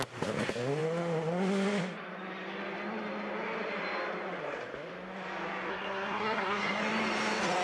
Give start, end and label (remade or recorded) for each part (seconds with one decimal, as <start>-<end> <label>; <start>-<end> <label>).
0.0-5.7 recorded; 5.7-6.8 remade; 6.8-7.6 recorded